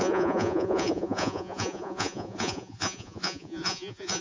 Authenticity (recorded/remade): remade